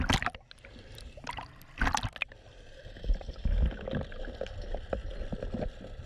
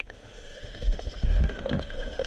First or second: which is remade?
second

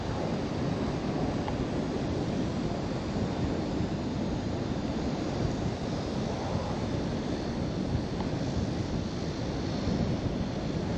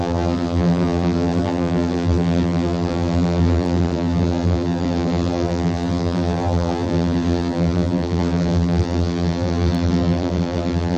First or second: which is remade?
second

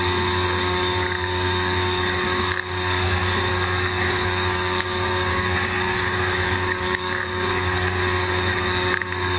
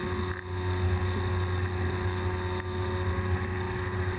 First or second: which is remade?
first